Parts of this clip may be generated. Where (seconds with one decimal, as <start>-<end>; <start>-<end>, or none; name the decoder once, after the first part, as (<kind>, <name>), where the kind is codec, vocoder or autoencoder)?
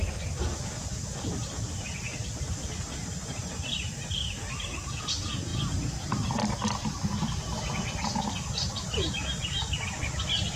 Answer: 1.0-2.7 (vocoder, BigVGAN v2)